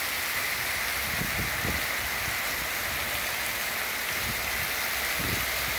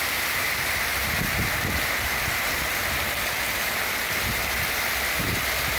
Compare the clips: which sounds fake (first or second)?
second